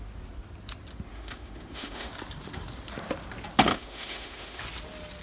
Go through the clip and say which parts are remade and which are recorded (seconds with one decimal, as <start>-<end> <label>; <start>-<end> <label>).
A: 0.0-1.1 recorded; 1.1-2.1 remade; 2.1-3.7 recorded; 3.7-4.6 remade; 4.6-5.2 recorded